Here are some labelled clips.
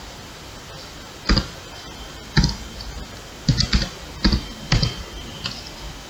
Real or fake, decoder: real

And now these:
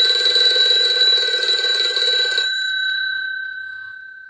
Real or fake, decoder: fake, vocoder, BigVGAN v2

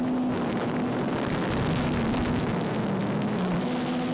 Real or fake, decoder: real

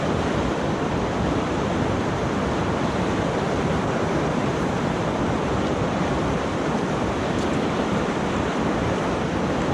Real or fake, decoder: fake, vocoder, BigVGAN v2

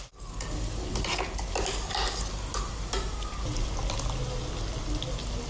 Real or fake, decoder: real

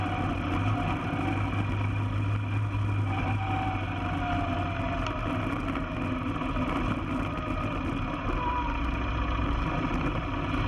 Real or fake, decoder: real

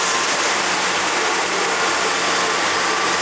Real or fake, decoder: real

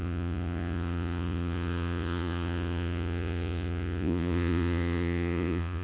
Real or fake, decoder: fake, vocoder, Vocos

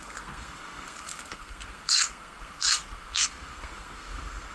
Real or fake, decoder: fake, codec, SNAC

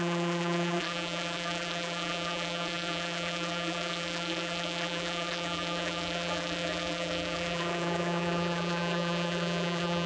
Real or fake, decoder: fake, vocoder, BigVGAN v2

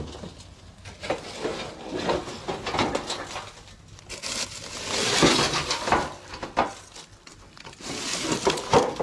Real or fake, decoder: real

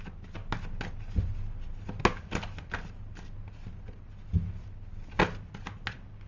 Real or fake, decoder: real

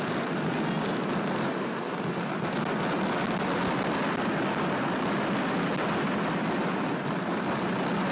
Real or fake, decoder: real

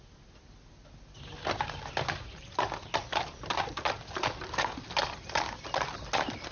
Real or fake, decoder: real